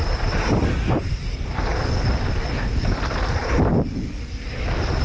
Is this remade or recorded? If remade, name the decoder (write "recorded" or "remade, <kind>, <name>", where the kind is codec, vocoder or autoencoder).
recorded